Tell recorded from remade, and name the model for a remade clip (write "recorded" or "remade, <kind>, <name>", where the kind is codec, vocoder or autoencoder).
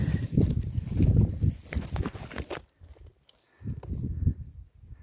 recorded